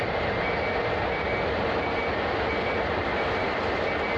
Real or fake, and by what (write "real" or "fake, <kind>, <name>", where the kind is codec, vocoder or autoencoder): real